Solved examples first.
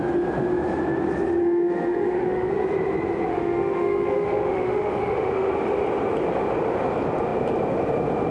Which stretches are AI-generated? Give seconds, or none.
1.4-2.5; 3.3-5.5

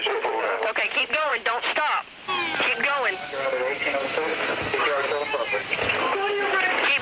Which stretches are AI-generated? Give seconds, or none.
none

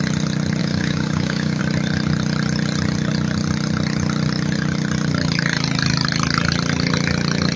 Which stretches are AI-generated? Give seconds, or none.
0.6-1.6

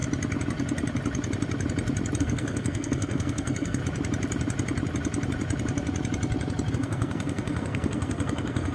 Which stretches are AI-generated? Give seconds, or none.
2.2-3.8; 6.7-8.7

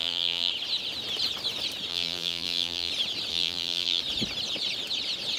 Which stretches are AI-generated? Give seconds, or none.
0.0-0.5; 1.9-2.9; 3.3-4.0

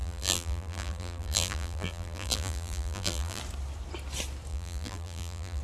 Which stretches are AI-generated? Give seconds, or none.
0.0-3.4; 4.5-5.6